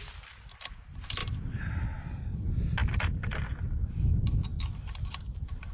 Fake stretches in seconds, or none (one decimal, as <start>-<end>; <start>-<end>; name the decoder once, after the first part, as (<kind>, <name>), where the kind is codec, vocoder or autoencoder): none